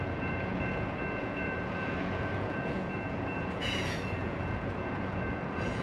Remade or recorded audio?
remade